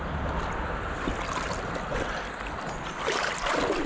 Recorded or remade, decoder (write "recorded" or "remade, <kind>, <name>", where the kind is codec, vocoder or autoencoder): recorded